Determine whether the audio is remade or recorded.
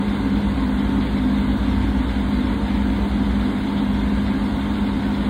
recorded